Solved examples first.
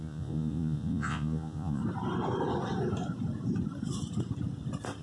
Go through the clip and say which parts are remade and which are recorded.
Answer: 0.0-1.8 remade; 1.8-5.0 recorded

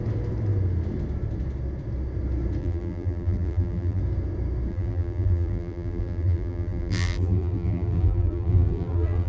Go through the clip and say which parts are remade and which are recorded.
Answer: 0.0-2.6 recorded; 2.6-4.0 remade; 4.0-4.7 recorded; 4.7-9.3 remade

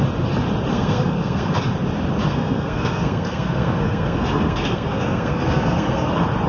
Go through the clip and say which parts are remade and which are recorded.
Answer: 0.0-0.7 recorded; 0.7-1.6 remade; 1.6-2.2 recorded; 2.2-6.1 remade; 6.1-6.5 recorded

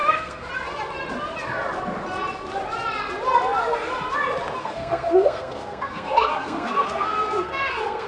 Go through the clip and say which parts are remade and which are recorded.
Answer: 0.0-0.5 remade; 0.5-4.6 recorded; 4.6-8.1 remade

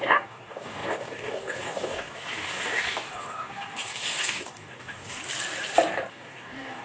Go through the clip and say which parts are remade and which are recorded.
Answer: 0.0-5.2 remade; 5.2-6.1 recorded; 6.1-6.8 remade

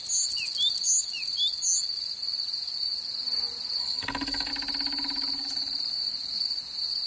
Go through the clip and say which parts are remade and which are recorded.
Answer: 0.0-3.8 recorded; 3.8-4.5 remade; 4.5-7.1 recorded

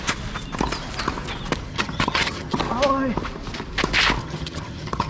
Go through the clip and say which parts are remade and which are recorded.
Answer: 0.0-1.7 recorded; 1.7-2.6 remade; 2.6-4.2 recorded; 4.2-5.1 remade

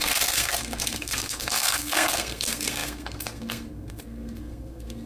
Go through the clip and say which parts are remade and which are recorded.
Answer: 0.0-5.1 remade